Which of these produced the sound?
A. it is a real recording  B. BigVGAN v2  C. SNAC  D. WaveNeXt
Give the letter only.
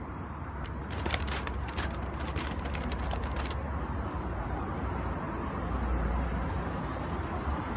B